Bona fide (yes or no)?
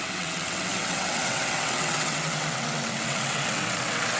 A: no